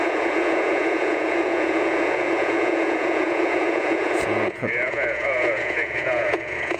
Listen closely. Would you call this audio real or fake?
fake